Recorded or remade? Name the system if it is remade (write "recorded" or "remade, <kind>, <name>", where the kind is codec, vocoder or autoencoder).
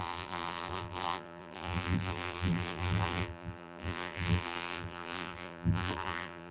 remade, vocoder, BigVGAN v2